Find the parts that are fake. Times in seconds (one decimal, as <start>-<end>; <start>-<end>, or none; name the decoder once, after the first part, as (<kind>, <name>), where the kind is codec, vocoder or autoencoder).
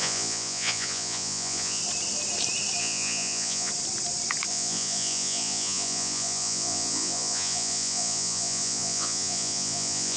0.0-1.8 (vocoder, Vocos); 2.8-3.7; 4.5-10.2